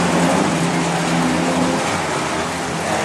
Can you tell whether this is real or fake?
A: real